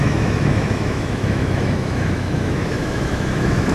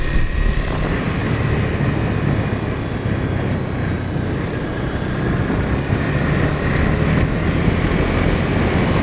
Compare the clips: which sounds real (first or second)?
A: second